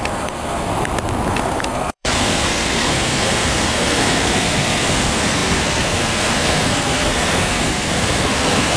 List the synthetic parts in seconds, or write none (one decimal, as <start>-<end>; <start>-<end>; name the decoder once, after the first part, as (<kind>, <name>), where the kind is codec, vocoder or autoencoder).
0.0-0.7 (codec, SNAC); 1.3-8.8